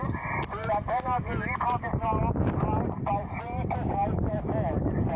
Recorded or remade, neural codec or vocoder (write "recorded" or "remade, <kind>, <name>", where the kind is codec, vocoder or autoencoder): recorded